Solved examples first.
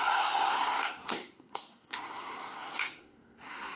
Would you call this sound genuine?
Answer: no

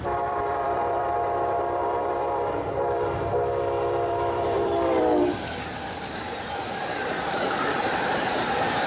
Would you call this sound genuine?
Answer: no